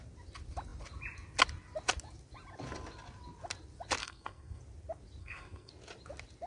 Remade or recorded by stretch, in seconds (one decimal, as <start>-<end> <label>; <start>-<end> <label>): 0.0-4.0 recorded; 4.0-4.6 remade; 4.6-5.2 recorded; 5.2-5.7 remade; 5.7-6.5 recorded